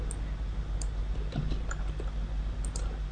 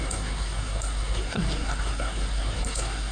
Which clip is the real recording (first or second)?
first